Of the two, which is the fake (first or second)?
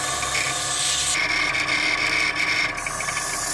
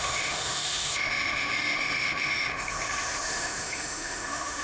second